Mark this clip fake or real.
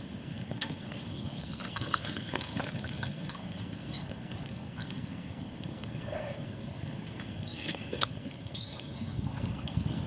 fake